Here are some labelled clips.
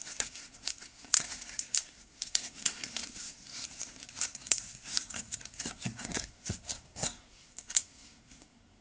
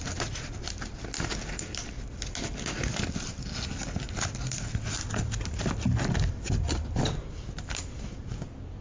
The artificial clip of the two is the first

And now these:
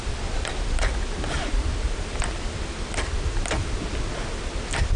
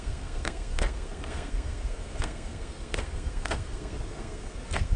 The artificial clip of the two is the second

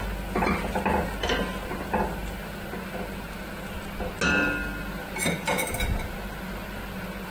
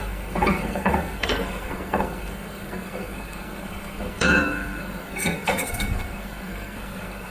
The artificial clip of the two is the second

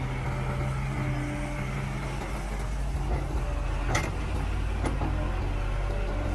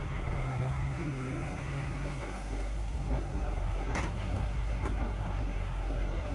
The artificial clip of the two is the second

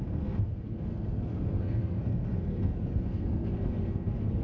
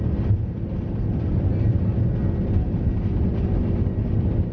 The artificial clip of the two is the first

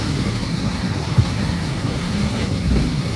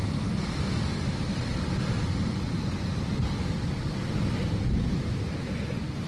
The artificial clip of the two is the first